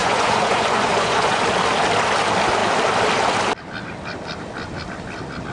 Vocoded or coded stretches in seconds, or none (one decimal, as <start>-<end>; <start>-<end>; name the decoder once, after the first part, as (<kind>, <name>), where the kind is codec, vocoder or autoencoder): 0.0-1.4 (vocoder, Vocos)

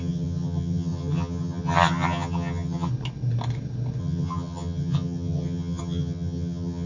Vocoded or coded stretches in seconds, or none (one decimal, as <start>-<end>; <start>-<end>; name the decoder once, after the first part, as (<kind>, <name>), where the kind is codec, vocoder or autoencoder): 0.0-2.9 (vocoder, HiFi-GAN); 4.0-6.9